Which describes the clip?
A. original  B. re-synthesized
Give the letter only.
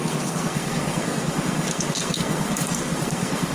B